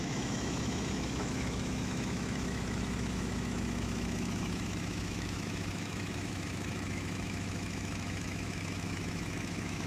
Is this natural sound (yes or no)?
no